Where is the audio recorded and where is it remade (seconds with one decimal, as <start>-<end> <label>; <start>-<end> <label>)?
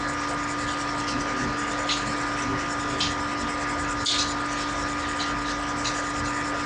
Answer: 0.0-6.7 recorded